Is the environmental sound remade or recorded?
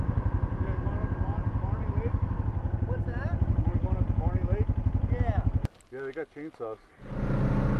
recorded